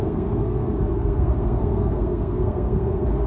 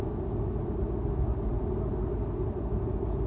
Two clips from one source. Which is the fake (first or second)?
first